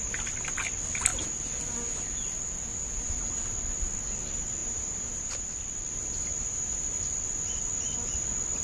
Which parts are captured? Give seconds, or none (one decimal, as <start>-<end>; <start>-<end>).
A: 0.0-8.6